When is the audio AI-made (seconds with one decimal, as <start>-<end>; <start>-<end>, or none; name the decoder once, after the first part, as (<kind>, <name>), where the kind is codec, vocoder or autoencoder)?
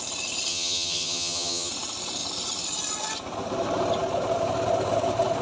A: 0.5-1.7 (vocoder, HiFi-GAN)